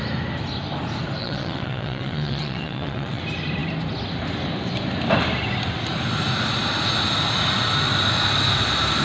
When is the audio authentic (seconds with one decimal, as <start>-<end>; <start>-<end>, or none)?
0.0-1.2; 3.2-9.0